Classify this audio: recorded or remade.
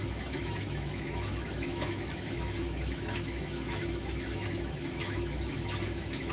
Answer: remade